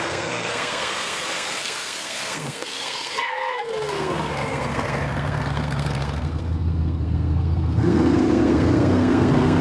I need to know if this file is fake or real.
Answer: fake